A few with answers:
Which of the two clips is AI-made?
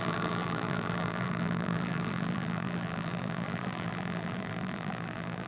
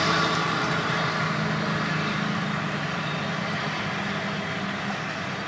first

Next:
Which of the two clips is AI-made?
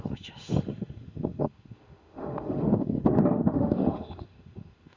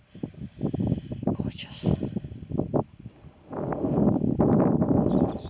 first